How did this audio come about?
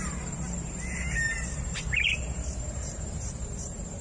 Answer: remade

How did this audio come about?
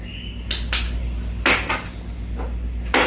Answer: recorded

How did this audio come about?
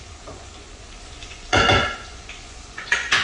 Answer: remade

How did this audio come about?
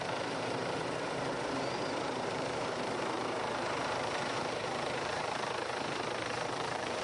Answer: remade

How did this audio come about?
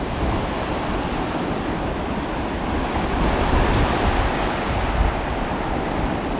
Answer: recorded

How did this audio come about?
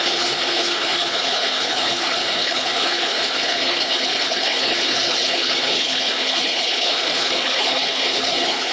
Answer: remade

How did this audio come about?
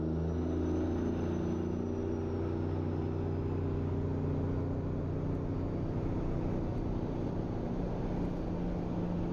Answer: recorded